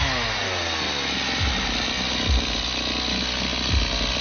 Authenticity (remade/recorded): recorded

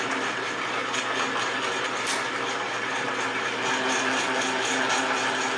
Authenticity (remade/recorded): recorded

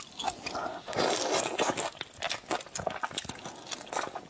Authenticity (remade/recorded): recorded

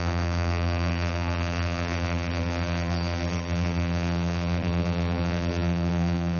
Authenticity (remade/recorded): remade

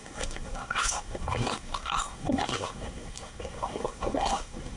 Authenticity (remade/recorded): remade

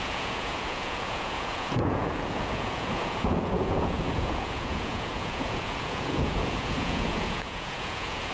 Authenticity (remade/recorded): remade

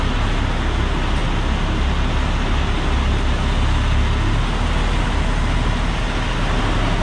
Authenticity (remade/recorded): recorded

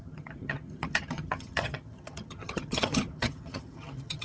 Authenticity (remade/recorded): remade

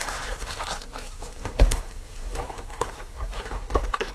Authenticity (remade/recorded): remade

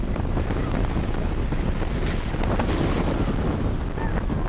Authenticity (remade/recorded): recorded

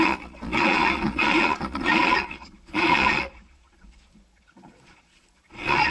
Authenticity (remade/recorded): remade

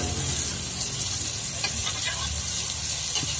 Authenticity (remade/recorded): recorded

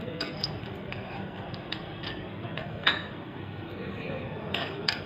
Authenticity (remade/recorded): remade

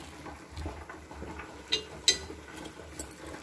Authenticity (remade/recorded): recorded